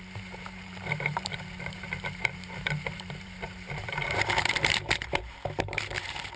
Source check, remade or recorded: remade